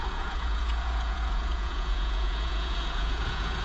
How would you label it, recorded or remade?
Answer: remade